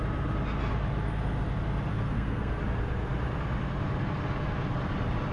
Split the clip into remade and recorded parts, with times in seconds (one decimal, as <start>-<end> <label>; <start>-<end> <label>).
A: 0.0-1.9 recorded; 1.9-2.6 remade; 2.6-5.3 recorded